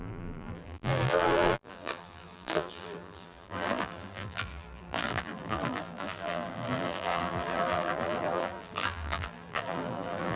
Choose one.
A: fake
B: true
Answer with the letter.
A